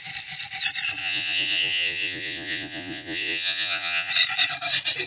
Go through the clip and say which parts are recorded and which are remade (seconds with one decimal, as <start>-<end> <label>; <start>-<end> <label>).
0.0-1.0 recorded; 1.0-4.1 remade; 4.1-5.1 recorded